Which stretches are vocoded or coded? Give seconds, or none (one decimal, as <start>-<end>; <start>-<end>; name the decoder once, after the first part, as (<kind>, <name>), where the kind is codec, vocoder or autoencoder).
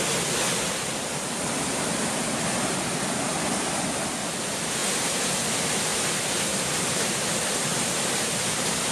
5.9-7.2 (vocoder, BigVGAN v2); 7.7-8.9